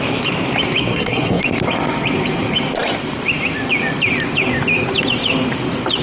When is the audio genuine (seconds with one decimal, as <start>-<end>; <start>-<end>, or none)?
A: 0.0-0.8; 1.4-6.0